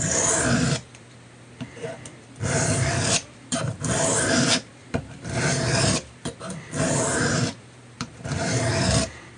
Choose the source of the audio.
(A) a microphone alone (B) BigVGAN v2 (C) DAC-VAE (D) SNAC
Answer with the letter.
B